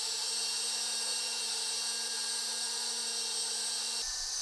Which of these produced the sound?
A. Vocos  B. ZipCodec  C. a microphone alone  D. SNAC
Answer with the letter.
C